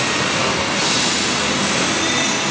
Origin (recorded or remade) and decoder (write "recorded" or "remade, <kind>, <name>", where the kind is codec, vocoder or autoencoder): remade, vocoder, BigVGAN v2